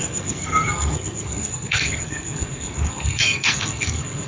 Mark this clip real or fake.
fake